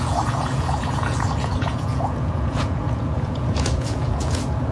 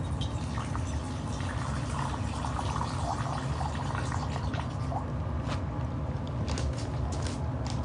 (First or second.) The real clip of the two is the second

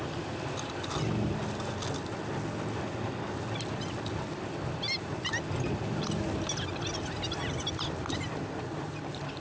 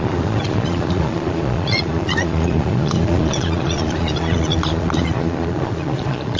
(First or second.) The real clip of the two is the first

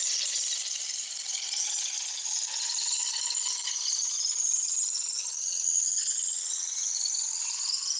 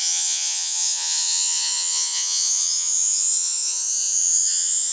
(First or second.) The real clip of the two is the first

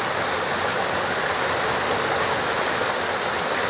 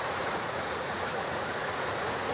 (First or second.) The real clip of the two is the first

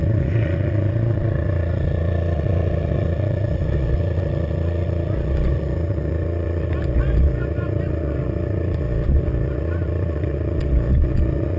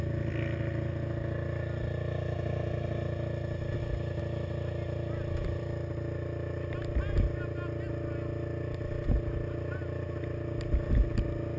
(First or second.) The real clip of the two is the second